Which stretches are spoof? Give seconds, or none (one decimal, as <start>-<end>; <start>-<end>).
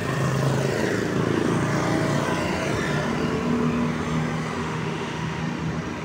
4.6-5.4